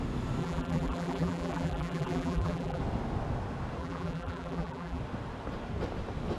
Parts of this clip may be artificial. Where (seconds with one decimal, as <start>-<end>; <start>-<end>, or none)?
0.4-2.8; 3.8-5.0